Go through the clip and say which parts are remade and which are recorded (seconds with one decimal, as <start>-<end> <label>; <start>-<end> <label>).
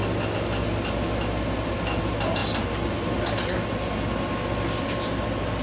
0.0-5.6 recorded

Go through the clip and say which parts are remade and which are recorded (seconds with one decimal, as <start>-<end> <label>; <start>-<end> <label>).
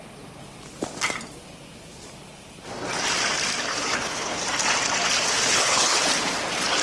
0.0-3.7 recorded; 3.7-4.4 remade; 4.4-5.5 recorded; 5.5-6.0 remade; 6.0-6.8 recorded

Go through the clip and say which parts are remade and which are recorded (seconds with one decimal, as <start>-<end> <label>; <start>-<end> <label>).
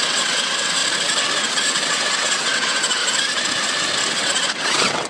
0.0-0.8 remade; 0.8-1.4 recorded; 1.4-3.0 remade; 3.0-4.1 recorded; 4.1-5.1 remade